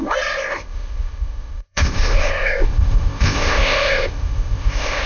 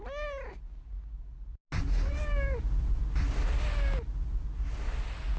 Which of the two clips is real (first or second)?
second